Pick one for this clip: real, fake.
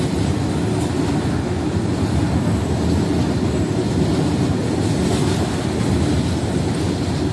real